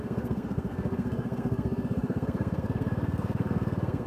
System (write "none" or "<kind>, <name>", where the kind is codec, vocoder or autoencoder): codec, SNAC